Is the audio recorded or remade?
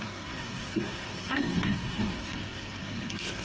remade